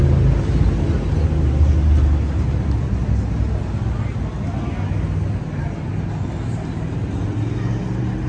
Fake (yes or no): no